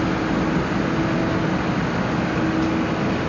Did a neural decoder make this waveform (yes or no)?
no